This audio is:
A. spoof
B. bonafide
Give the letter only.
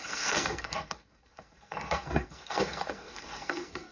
A